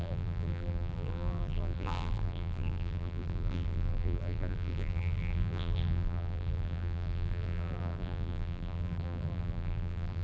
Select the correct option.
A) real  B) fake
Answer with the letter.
B